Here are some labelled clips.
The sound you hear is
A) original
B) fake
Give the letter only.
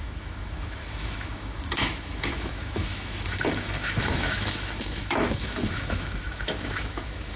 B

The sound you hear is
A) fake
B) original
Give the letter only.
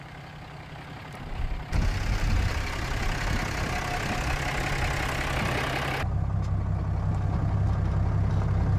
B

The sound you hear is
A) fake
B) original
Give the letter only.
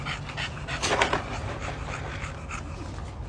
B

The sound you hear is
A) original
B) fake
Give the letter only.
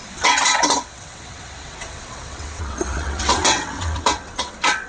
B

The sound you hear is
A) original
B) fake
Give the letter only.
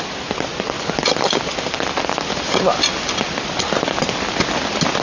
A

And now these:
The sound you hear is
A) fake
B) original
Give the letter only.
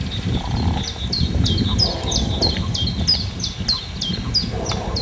B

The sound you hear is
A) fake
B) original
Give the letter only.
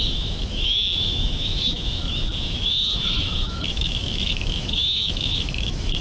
A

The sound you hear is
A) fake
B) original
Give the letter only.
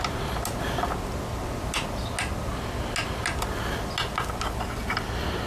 B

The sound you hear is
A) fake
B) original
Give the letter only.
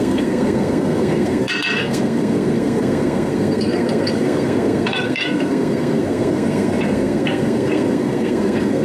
A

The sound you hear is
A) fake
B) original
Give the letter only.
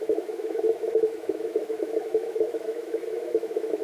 A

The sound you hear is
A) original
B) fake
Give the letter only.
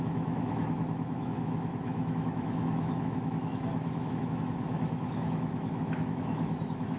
B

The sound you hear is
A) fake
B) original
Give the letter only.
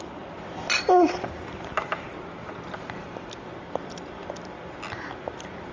A